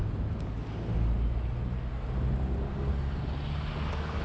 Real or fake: real